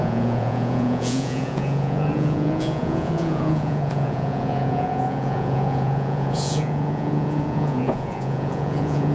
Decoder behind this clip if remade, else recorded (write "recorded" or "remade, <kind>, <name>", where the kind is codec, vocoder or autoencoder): remade, vocoder, Vocos